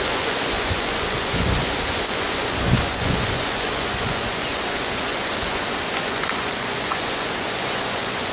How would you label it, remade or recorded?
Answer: remade